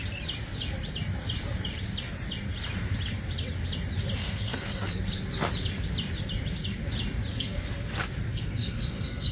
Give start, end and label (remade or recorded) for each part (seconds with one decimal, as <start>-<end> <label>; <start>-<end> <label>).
0.0-4.2 recorded; 4.2-5.0 remade; 5.0-7.3 recorded; 7.3-7.9 remade; 7.9-8.3 recorded; 8.3-9.3 remade